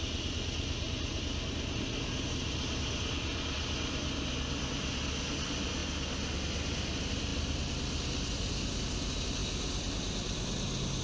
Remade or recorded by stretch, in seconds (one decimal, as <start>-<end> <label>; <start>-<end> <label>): 0.0-11.0 recorded